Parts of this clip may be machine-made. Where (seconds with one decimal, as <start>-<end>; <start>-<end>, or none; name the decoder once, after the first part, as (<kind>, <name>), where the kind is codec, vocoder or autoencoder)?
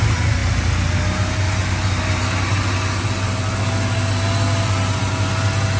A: none